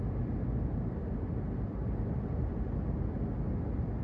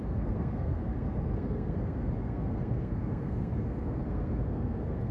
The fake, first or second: second